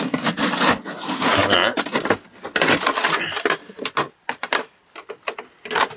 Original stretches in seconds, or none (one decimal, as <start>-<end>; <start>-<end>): 0.0-6.0